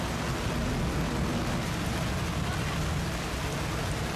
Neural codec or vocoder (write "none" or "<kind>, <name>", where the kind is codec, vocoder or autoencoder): none